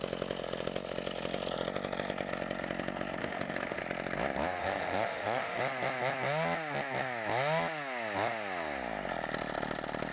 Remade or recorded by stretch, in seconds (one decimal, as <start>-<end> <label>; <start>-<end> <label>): 0.0-3.2 recorded; 3.2-3.8 remade; 3.8-4.6 recorded; 4.6-5.6 remade; 5.6-10.1 recorded